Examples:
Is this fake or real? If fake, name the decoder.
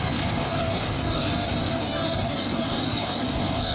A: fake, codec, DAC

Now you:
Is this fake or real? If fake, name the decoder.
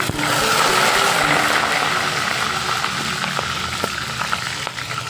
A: real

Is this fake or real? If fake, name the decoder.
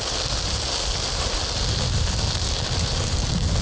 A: real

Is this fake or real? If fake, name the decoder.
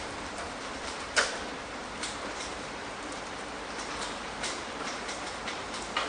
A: fake, vocoder, BigVGAN v2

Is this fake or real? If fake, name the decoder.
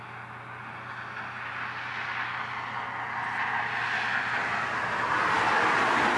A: real